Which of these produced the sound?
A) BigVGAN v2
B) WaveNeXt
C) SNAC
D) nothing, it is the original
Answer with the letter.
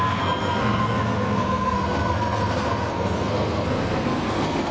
C